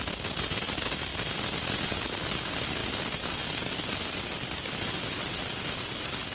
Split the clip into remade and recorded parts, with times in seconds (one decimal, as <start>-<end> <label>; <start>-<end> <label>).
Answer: 0.0-6.3 recorded